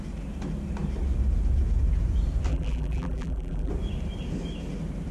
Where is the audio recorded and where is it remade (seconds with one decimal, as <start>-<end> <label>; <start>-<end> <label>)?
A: 0.0-2.5 recorded; 2.5-3.7 remade; 3.7-5.1 recorded